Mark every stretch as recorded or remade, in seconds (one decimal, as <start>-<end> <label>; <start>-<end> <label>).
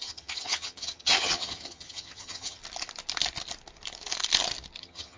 0.0-2.6 remade; 2.6-4.8 recorded; 4.8-5.2 remade